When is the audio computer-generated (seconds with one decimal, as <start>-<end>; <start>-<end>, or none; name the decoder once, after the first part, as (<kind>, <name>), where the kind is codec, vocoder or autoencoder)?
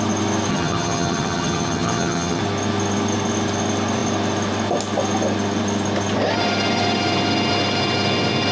0.5-2.4 (vocoder, HiFi-GAN)